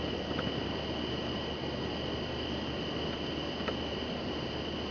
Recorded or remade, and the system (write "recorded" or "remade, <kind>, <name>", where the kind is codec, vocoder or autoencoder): recorded